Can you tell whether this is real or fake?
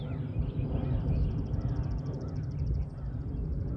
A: real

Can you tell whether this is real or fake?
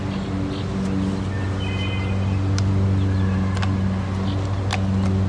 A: real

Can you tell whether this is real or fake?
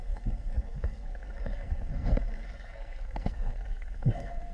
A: fake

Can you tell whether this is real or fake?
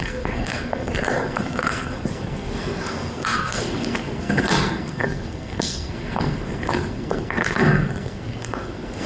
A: fake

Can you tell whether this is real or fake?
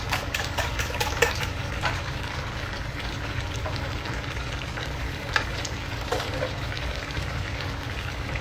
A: fake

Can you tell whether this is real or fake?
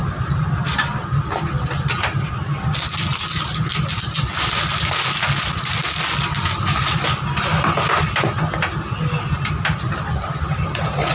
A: real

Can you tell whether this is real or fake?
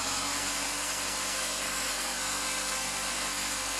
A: fake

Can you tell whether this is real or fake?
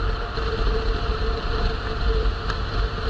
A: fake